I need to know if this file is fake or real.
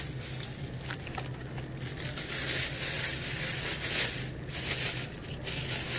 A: real